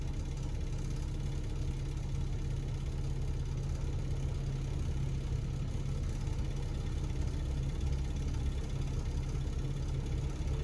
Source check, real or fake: real